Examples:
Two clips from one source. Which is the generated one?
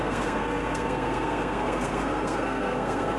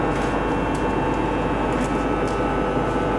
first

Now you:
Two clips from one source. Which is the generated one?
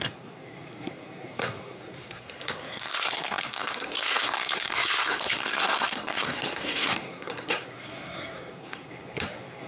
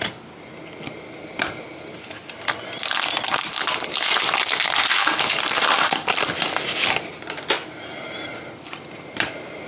first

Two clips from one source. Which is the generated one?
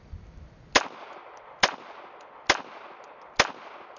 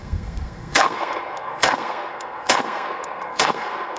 second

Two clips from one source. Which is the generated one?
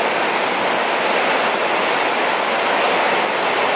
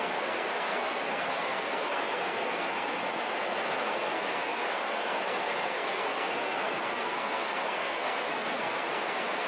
second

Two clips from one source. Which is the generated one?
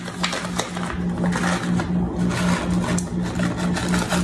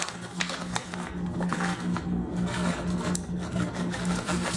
second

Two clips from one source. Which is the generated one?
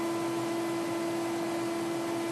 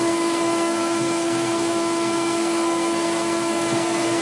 second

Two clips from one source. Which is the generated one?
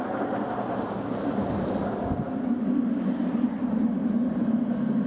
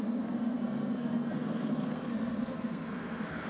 second